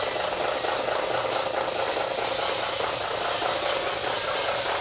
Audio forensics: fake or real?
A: real